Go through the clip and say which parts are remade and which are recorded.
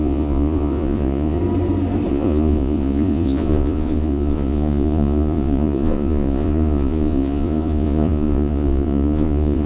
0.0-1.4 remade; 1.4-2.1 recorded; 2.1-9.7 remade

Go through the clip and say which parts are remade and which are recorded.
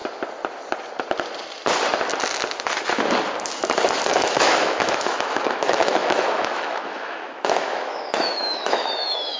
0.0-4.1 recorded; 4.1-9.4 remade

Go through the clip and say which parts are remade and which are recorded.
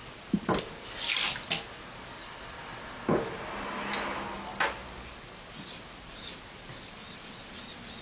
0.0-8.0 recorded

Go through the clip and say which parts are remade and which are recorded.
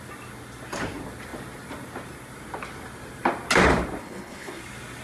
0.0-4.0 recorded; 4.0-4.6 remade; 4.6-5.0 recorded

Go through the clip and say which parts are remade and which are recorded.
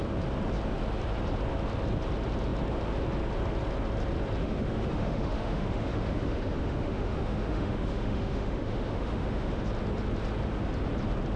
0.0-4.4 recorded; 4.4-9.6 remade; 9.6-11.4 recorded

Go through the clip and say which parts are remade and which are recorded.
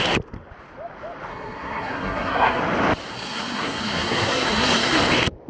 0.0-1.3 recorded; 1.3-2.6 remade; 2.6-3.1 recorded; 3.1-5.0 remade; 5.0-5.5 recorded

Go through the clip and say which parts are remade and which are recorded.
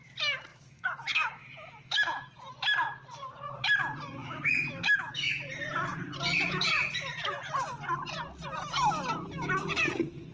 0.0-0.5 recorded; 0.5-2.3 remade; 2.3-4.2 recorded; 4.2-5.5 remade; 5.5-10.3 recorded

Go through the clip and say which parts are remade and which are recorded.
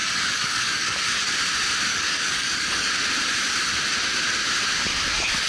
0.0-1.3 remade; 1.3-1.9 recorded; 1.9-2.9 remade; 2.9-5.5 recorded